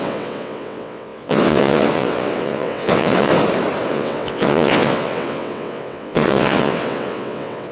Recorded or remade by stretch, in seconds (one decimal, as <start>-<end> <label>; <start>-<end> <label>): 0.0-3.3 remade; 3.3-3.9 recorded; 3.9-7.7 remade